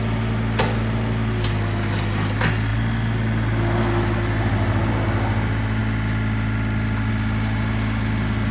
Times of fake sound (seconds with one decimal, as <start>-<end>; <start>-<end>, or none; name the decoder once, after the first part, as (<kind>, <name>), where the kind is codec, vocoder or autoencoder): none